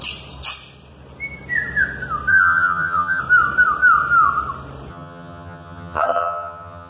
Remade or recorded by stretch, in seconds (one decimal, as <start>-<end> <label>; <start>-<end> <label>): 0.0-2.3 recorded; 2.3-3.2 remade; 3.2-4.9 recorded; 4.9-6.9 remade